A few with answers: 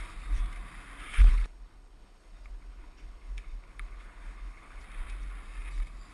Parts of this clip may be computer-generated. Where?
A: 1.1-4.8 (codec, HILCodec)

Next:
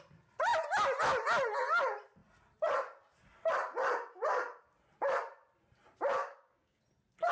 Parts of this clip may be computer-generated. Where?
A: 6.2-6.8 (codec, DAC)

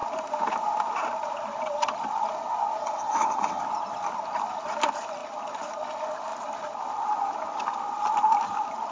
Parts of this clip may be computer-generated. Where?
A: 2.8-3.6 (vocoder, HiFi-GAN)

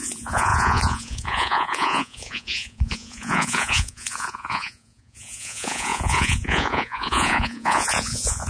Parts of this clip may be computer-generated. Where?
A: 0.0-8.5 (vocoder, Vocos)

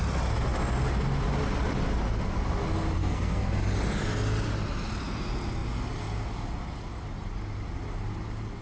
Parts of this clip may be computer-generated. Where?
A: 3.0-3.5 (codec, SNAC)

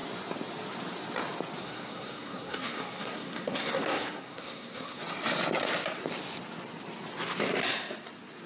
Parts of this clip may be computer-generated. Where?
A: 1.6-5.0 (codec, SNAC)

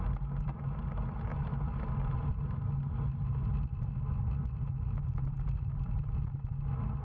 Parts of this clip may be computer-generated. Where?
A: 1.3-2.7 (vocoder, BigVGAN v2)